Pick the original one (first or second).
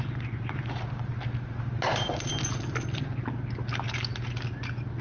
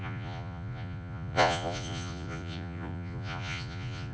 first